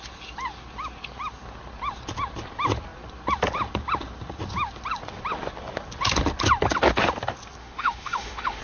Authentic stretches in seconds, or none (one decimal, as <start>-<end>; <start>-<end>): 0.0-7.6